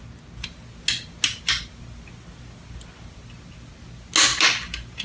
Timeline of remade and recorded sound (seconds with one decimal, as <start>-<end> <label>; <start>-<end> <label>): 0.0-5.0 recorded